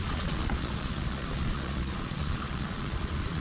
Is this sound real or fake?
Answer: fake